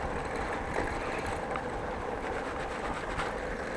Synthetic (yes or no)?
no